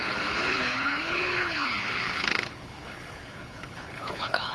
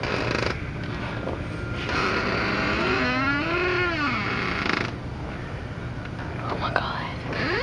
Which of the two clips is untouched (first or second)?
second